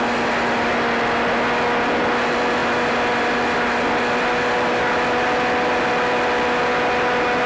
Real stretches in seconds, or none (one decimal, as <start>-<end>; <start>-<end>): 0.0-7.5